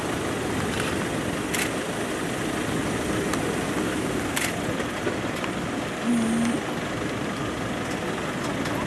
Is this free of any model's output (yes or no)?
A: yes